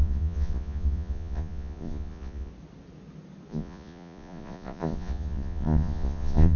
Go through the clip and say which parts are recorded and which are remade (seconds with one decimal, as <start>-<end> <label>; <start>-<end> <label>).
0.0-2.5 remade; 2.5-3.5 recorded; 3.5-6.6 remade